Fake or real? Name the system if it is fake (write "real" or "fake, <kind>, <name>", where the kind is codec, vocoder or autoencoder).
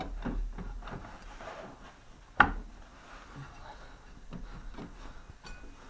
real